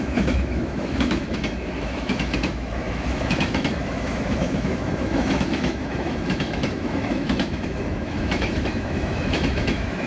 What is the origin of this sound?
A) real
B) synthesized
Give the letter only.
B